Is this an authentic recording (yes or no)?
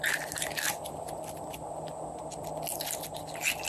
yes